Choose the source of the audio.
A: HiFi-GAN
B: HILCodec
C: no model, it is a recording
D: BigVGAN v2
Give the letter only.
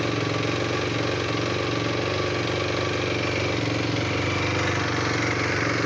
C